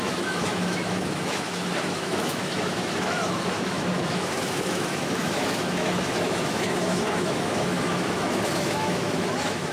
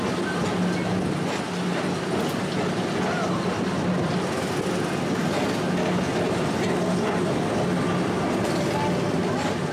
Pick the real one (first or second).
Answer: second